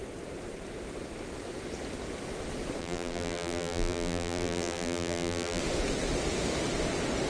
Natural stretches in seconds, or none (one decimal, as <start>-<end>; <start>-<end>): 0.0-2.8; 5.6-7.3